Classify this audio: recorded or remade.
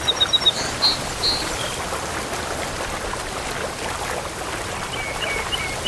recorded